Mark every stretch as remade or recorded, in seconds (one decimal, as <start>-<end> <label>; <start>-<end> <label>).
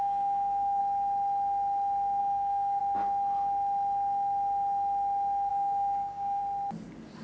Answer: 0.0-0.8 remade; 0.8-2.2 recorded; 2.2-2.8 remade; 2.8-5.5 recorded; 5.5-6.4 remade; 6.4-7.2 recorded